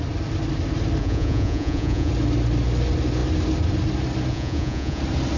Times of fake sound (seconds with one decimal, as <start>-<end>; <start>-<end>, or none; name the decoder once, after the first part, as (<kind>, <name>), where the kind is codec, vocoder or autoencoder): 1.0-2.1 (vocoder, Vocos); 4.3-5.0

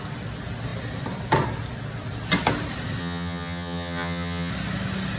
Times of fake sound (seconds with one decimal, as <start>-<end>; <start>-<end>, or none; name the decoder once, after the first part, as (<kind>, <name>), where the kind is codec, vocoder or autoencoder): 3.0-4.5 (vocoder, HiFi-GAN)

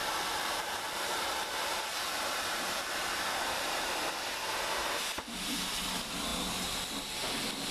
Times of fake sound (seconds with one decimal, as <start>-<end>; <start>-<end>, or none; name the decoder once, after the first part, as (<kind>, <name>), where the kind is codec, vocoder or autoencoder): 0.0-4.1 (vocoder, BigVGAN v2)

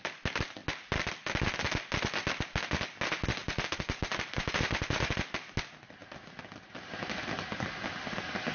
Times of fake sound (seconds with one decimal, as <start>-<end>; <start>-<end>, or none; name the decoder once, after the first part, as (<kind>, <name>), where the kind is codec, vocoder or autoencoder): 3.4-5.1 (vocoder, BigVGAN v2)

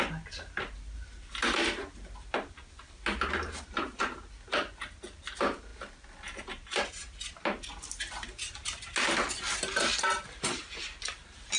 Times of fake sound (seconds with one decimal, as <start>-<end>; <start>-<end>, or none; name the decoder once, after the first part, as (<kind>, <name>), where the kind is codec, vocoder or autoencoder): none

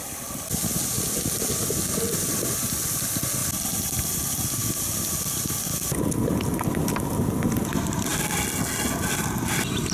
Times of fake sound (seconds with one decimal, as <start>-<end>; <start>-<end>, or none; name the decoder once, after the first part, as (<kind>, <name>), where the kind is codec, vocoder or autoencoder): none

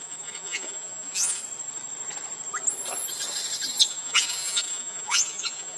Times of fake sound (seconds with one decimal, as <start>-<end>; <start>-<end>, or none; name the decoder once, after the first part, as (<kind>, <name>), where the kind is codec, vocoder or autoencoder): 0.0-1.4 (vocoder, Vocos); 3.9-5.8